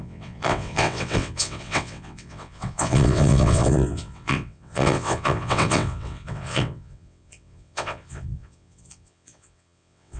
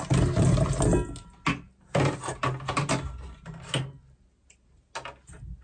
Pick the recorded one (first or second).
second